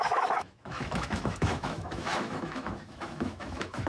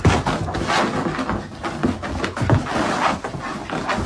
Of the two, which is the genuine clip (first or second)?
second